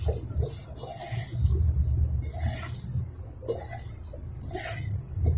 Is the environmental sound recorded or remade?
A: recorded